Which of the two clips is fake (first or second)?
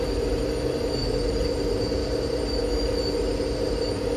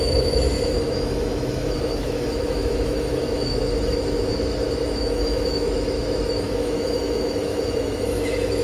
second